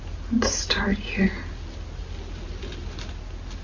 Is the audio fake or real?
real